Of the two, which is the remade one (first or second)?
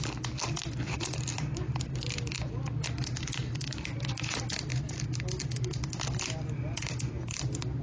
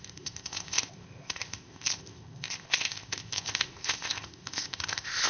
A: second